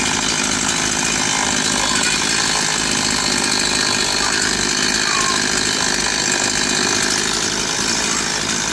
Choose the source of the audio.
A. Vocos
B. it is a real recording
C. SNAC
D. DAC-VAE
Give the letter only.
B